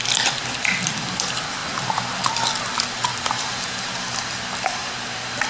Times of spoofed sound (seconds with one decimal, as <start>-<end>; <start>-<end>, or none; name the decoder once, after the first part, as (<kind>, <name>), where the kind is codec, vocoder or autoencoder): none